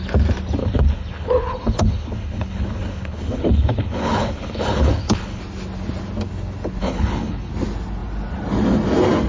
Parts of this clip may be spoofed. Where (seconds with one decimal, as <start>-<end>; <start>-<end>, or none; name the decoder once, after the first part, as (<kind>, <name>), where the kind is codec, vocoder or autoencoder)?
0.6-5.4 (codec, HILCodec); 6.8-7.5